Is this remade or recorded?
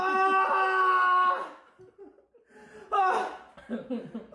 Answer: recorded